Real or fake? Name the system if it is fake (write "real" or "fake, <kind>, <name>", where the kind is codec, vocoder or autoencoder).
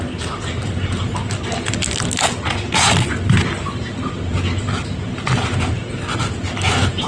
real